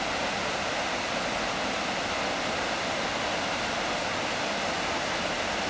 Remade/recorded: recorded